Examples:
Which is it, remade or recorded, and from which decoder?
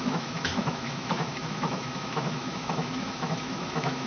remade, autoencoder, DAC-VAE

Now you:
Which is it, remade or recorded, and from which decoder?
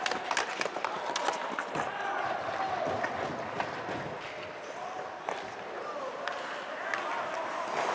recorded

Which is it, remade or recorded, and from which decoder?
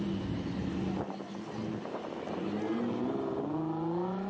recorded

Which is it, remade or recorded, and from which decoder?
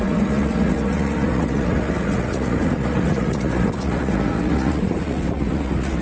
remade, vocoder, Vocos